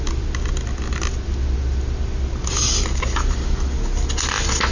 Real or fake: real